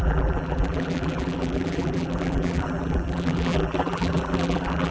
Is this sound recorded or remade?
remade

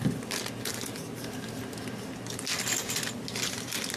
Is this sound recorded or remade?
recorded